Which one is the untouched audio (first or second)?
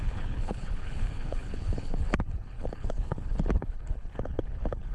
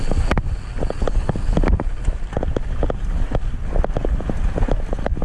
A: second